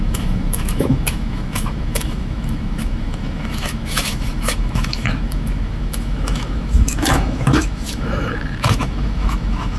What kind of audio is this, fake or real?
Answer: fake